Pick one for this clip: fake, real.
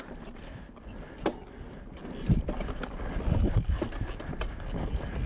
real